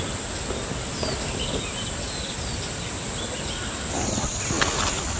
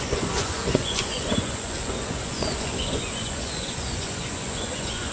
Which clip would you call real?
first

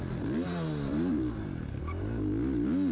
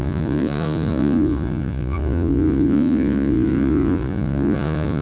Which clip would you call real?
first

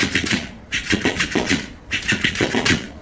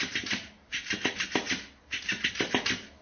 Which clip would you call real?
second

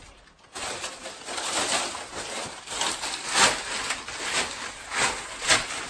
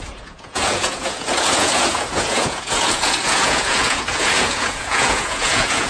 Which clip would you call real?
first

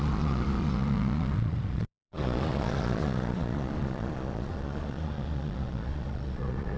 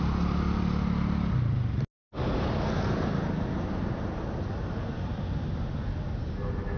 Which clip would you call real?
second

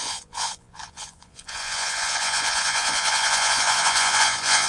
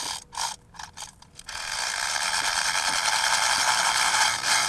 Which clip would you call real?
second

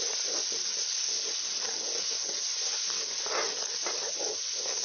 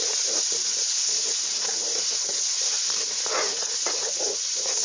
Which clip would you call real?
first